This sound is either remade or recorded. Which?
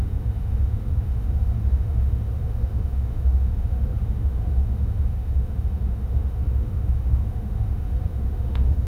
remade